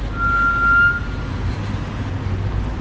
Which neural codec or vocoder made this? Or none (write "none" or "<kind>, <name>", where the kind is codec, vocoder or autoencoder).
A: none